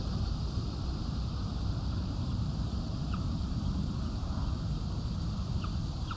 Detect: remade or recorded remade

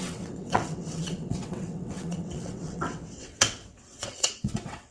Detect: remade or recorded remade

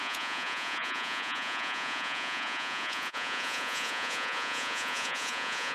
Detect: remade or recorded remade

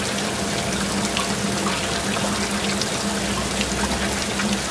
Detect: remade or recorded recorded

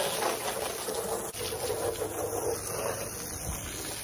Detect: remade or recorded recorded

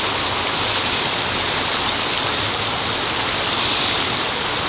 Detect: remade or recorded recorded